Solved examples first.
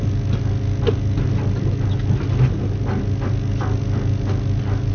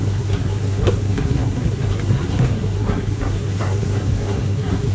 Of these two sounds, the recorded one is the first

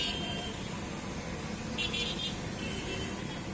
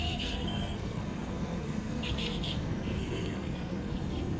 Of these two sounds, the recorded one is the first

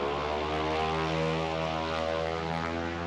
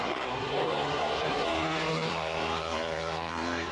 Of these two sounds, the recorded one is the first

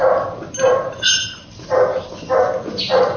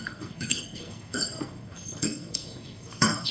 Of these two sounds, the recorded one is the first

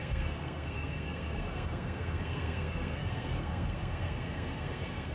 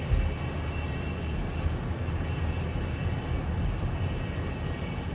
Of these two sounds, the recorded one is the second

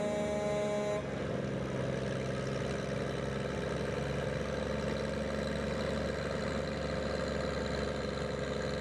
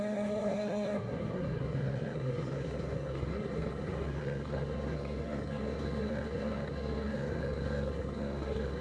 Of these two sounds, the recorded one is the first